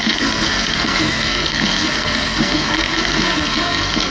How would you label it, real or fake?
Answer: fake